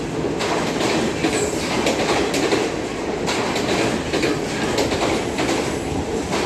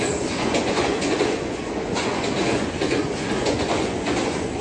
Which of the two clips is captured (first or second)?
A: first